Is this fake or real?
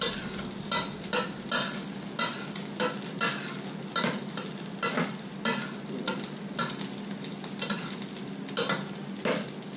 real